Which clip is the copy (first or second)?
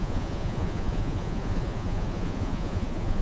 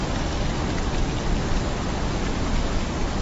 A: first